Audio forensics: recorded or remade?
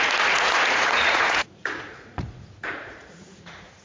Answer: remade